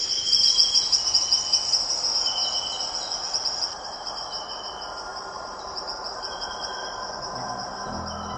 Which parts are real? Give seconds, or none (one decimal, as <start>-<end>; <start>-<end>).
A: 0.0-5.1; 7.7-8.4